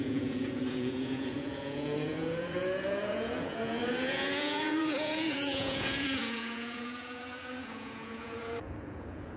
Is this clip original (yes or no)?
no